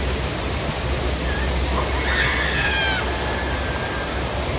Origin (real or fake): real